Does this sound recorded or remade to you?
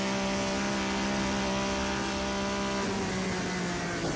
recorded